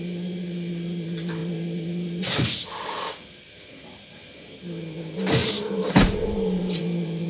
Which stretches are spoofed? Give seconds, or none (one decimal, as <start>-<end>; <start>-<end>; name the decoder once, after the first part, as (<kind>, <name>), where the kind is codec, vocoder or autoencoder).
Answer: 5.4-6.8 (vocoder, BigVGAN v2)